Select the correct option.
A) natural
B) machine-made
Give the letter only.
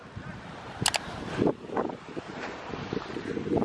A